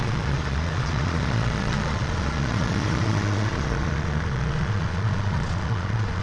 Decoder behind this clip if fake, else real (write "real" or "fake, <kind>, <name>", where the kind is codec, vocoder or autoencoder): fake, vocoder, Vocos